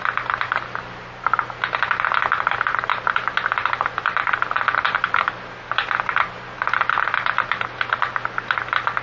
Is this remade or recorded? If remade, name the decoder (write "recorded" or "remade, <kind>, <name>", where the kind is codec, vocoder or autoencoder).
recorded